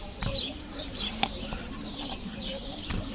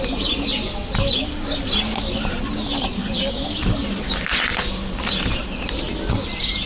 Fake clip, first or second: first